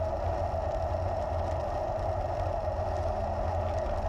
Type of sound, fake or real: real